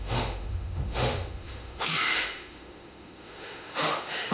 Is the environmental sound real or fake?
fake